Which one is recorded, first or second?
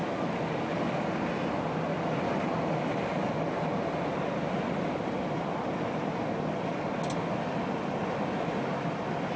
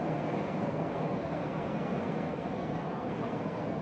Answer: first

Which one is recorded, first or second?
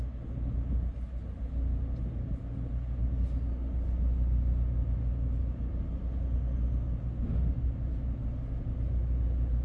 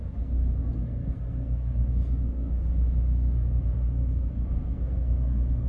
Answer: first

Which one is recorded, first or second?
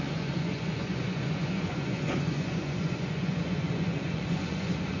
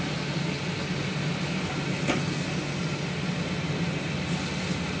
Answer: second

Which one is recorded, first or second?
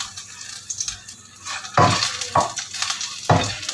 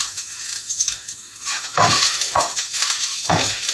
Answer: first